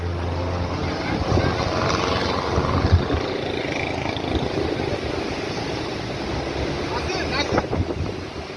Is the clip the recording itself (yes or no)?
yes